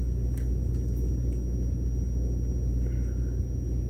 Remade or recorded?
recorded